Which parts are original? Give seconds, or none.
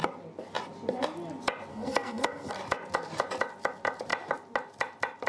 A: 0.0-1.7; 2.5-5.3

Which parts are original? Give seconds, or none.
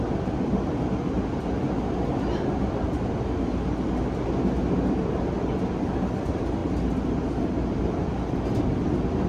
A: 0.0-9.3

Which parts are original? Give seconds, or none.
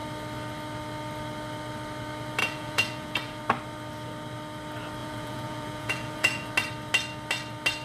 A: 0.0-2.4; 3.4-5.0; 6.5-7.8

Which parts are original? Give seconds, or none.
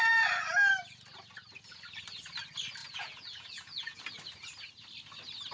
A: 0.0-2.8; 4.0-5.5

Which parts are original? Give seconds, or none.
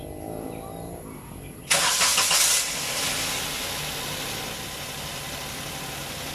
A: 0.0-6.3